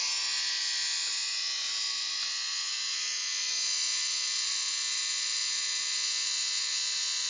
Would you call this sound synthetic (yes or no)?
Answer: yes